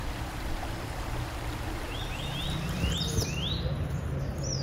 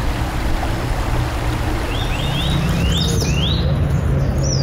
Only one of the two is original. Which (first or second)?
second